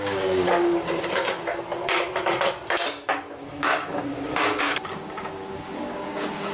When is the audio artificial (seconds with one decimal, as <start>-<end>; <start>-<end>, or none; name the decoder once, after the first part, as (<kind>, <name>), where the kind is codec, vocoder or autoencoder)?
0.0-1.5 (codec, DAC); 3.2-4.1; 4.6-6.5

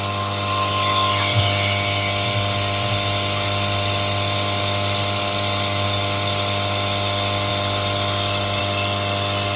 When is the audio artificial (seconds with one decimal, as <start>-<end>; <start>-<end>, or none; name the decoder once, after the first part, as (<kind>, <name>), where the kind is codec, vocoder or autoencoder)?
none

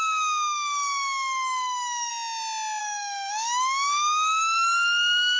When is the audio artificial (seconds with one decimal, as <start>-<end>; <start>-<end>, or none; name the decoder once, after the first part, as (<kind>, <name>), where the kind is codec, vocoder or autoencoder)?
0.0-2.1 (codec, DAC); 2.8-5.4

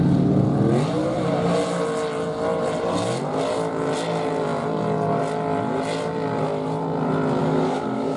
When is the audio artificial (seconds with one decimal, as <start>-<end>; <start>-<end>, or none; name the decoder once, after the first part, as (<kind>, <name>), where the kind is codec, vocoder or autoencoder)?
7.4-8.2 (codec, DAC)

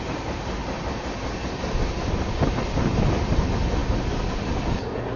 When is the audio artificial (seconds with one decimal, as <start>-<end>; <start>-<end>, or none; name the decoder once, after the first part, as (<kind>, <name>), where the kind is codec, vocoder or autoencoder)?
none

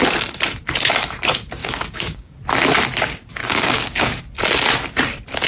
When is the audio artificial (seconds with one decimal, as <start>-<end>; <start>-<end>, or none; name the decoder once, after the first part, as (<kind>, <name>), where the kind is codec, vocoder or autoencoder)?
1.6-2.3 (codec, DAC); 3.4-4.2